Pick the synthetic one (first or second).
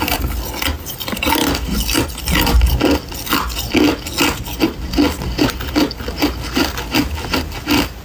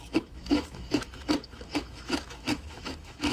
second